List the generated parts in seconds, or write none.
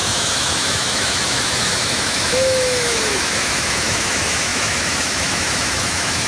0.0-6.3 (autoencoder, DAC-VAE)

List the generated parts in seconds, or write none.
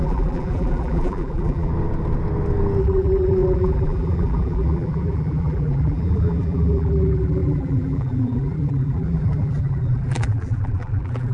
0.0-1.7 (vocoder, BigVGAN v2); 2.8-11.3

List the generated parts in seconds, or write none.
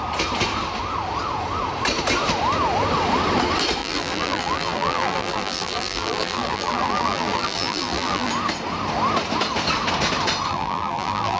3.8-8.3 (vocoder, BigVGAN v2); 10.5-11.4